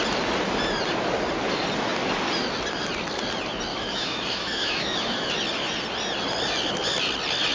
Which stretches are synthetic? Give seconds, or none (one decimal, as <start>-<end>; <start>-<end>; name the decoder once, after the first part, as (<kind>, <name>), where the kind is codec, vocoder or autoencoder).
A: 3.7-5.3 (autoencoder, DAC-VAE)